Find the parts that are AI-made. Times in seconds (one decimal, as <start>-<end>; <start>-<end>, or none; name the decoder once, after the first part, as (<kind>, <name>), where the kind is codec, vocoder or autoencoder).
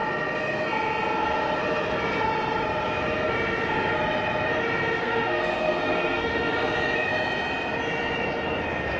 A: 5.0-6.5 (codec, SNAC)